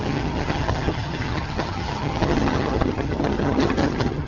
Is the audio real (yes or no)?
no